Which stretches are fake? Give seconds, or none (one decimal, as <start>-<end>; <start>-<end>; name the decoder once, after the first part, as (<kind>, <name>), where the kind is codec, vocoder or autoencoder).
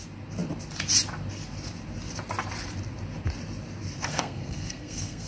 4.1-5.3 (codec, SNAC)